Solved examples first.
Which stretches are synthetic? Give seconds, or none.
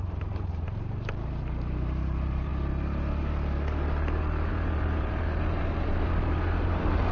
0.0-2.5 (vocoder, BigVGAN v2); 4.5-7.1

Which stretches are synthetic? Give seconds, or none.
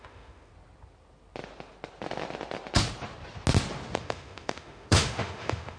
0.0-0.5 (autoencoder, DAC-VAE); 4.0-5.8